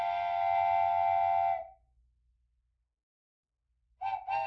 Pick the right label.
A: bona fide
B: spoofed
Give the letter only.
A